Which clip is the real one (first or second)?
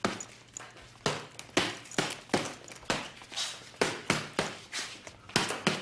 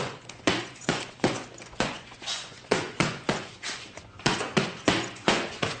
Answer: first